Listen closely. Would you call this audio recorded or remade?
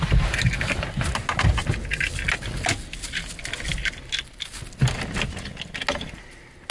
recorded